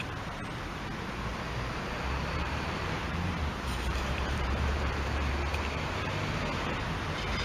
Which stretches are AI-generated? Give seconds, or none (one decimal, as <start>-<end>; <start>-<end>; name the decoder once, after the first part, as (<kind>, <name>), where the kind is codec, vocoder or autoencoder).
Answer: 1.3-5.3 (vocoder, BigVGAN v2)